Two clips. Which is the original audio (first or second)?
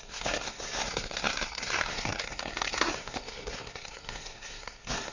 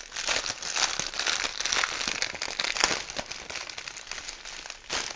second